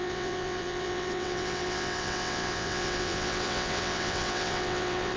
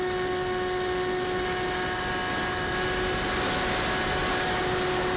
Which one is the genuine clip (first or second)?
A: second